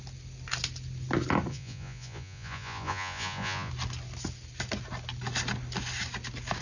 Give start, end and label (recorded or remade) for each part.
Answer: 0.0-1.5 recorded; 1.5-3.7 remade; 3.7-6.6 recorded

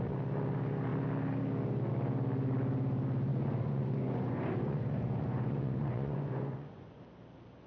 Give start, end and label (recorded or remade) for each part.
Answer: 0.0-3.3 recorded; 3.3-7.0 remade; 7.0-7.7 recorded

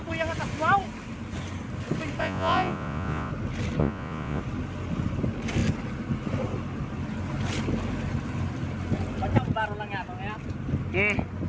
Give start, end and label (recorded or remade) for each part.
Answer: 0.0-2.2 recorded; 2.2-3.3 remade; 3.3-3.8 recorded; 3.8-4.4 remade; 4.4-11.5 recorded

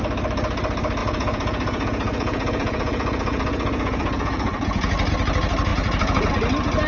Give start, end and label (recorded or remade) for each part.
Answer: 0.0-1.0 recorded; 1.0-5.1 remade; 5.1-5.7 recorded; 5.7-6.3 remade; 6.3-6.9 recorded

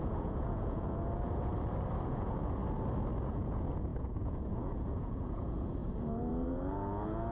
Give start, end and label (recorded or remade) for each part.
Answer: 0.0-1.5 remade; 1.5-2.1 recorded; 2.1-2.6 remade; 2.6-3.3 recorded; 3.3-7.3 remade